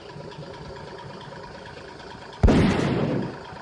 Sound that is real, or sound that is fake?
real